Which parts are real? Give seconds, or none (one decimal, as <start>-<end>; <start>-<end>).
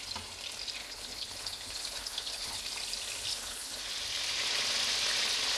0.0-0.8; 2.6-3.3; 3.8-5.6